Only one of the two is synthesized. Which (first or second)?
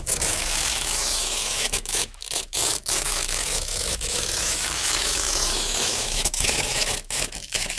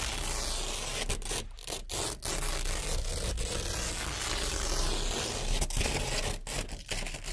first